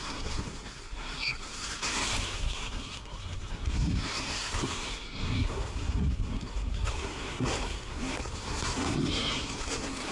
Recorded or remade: remade